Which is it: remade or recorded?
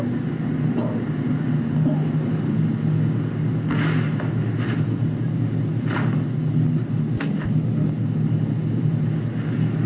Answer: recorded